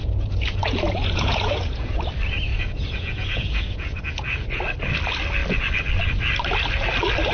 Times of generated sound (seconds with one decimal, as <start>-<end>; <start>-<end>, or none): 0.0-2.1; 2.5-4.6